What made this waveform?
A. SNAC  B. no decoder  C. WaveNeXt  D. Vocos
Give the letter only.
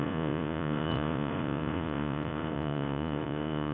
D